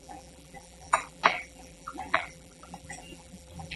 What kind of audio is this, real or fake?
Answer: fake